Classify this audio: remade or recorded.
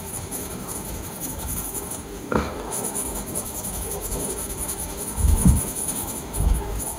remade